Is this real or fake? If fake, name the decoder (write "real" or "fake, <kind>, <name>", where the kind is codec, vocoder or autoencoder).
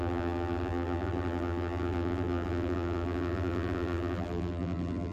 fake, vocoder, BigVGAN v2